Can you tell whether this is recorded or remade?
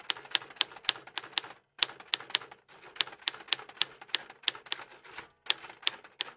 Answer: recorded